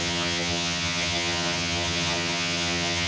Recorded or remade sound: remade